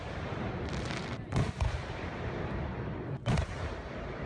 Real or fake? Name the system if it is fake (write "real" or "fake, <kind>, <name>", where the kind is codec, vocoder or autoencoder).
fake, vocoder, BigVGAN v2